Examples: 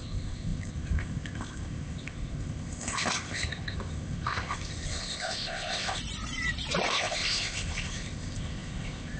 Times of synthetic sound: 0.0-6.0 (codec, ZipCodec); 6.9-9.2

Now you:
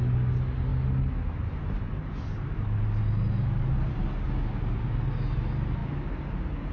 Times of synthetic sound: none

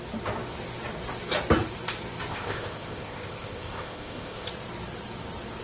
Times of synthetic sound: 2.3-4.5 (codec, ZipCodec)

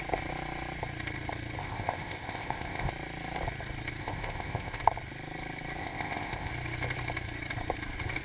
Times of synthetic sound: 1.6-2.9 (codec, ZipCodec); 4.0-4.8; 5.8-6.5

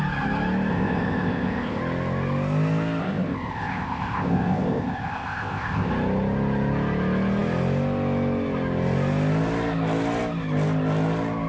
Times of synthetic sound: 0.7-1.8 (codec, ZipCodec); 3.0-5.9

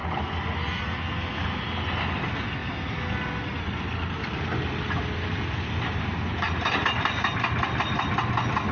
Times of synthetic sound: none